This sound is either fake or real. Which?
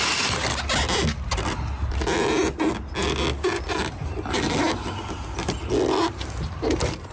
real